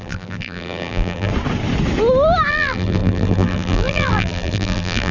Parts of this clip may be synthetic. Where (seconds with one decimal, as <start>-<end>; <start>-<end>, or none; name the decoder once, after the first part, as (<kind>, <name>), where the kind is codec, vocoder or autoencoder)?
0.0-1.3 (vocoder, BigVGAN v2); 2.5-5.1